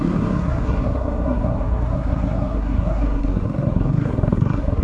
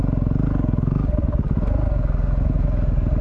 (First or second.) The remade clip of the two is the first